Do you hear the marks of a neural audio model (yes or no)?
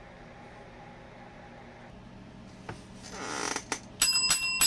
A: no